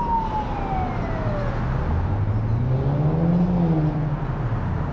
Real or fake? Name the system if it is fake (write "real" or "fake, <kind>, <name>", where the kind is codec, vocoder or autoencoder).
real